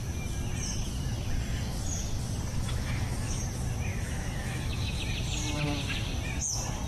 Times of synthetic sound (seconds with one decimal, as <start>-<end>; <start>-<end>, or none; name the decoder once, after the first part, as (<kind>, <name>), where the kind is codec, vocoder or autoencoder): 2.5-3.4 (autoencoder, DAC-VAE); 3.9-5.0